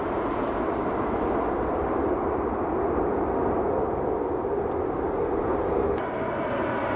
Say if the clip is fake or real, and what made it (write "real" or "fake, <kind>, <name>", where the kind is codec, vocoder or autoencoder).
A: real